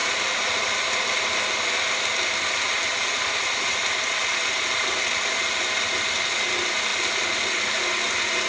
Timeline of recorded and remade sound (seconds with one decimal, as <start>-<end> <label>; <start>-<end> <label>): 0.0-8.5 recorded